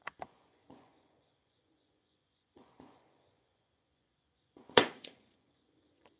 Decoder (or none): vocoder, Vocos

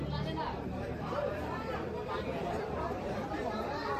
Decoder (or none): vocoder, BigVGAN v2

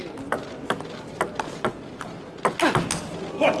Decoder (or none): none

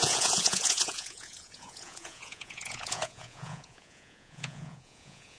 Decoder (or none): vocoder, Vocos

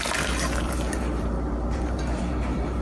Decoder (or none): vocoder, BigVGAN v2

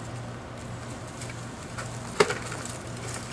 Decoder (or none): none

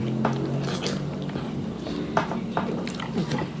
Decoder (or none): none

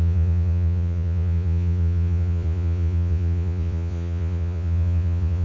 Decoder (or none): vocoder, Vocos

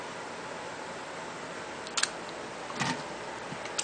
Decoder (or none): none